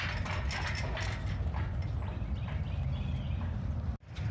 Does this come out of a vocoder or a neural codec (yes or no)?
no